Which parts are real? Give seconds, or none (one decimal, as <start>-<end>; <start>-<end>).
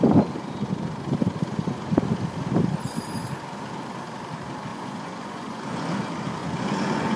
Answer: 0.0-4.7; 5.8-6.4